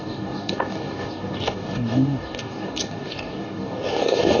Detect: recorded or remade remade